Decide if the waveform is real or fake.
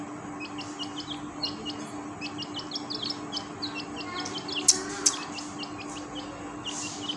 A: real